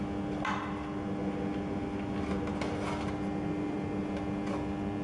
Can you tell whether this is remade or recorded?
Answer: recorded